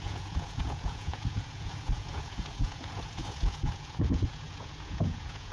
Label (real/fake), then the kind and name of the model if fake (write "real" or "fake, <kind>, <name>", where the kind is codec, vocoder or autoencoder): fake, vocoder, Vocos